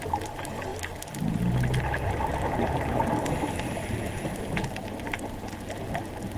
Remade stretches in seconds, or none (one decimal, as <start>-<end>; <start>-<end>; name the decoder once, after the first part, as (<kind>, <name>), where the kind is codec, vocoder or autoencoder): none